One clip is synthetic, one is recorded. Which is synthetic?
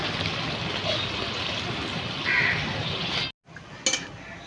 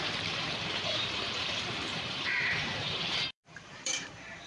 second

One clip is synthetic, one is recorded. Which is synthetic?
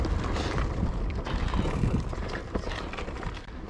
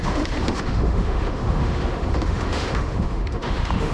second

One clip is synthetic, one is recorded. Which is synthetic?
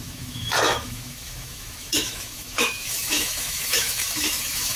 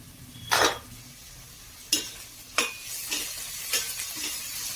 first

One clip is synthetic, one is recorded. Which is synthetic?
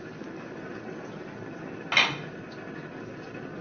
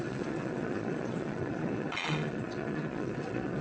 second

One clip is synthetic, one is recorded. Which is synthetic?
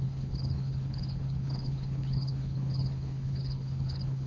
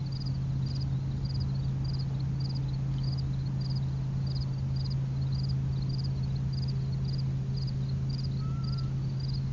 first